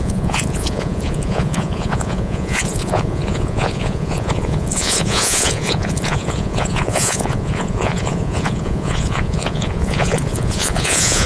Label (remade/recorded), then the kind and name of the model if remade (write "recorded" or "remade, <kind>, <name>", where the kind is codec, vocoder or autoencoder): remade, vocoder, Vocos